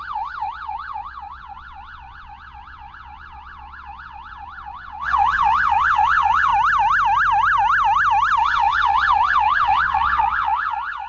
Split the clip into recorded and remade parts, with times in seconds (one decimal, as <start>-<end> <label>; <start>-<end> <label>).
0.0-6.5 remade; 6.5-8.4 recorded; 8.4-11.1 remade